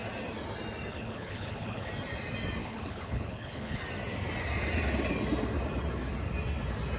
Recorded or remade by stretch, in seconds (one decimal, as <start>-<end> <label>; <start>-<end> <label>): 0.0-0.9 recorded; 0.9-1.9 remade; 1.9-2.6 recorded; 2.6-3.8 remade; 3.8-7.0 recorded